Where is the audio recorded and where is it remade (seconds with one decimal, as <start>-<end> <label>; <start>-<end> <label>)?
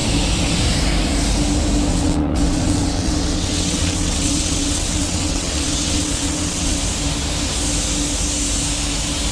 0.0-1.9 recorded; 1.9-6.8 remade; 6.8-9.3 recorded